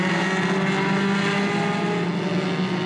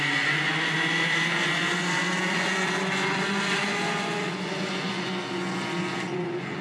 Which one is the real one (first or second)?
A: first